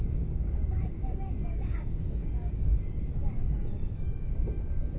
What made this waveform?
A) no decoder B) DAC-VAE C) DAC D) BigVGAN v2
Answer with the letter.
C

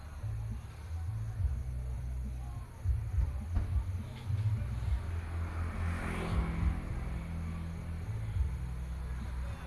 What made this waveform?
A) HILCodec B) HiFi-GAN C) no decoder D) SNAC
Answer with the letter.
C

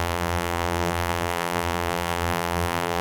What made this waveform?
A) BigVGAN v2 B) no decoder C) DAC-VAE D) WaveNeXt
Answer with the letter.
A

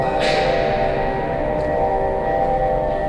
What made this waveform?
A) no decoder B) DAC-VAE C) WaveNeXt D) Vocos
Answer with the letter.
A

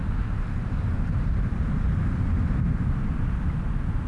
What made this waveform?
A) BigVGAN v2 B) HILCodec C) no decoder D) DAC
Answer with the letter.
C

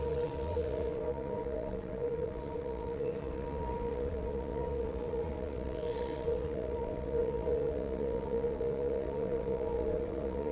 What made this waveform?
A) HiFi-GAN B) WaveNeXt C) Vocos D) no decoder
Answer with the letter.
B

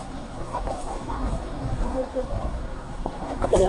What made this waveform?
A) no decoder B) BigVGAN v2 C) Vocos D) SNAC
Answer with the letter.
D